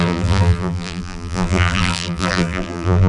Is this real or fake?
fake